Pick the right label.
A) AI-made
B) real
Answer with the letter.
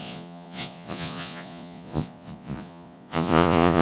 A